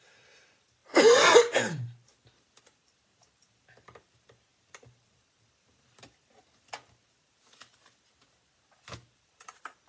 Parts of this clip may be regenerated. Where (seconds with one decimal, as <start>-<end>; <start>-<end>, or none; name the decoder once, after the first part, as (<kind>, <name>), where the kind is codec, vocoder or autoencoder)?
0.0-9.9 (vocoder, BigVGAN v2)